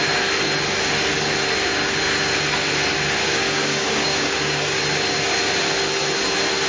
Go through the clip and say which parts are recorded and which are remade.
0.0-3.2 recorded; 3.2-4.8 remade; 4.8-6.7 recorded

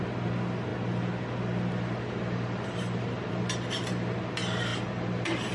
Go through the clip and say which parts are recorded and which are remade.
0.0-5.5 recorded

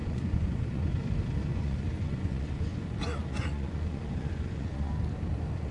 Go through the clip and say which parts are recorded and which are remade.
0.0-0.9 remade; 0.9-1.5 recorded; 1.5-4.9 remade; 4.9-5.7 recorded